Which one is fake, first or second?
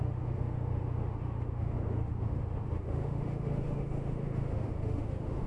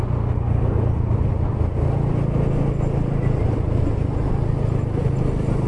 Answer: first